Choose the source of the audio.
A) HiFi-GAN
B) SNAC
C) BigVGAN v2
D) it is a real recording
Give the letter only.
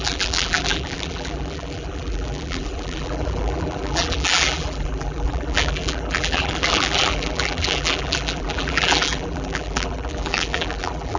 C